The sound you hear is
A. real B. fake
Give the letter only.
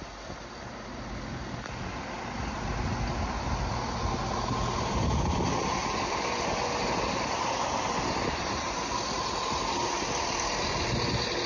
A